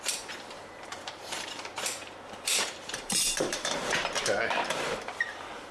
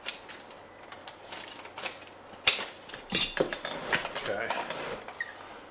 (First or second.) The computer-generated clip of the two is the first